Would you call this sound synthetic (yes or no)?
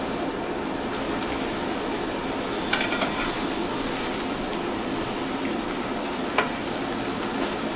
no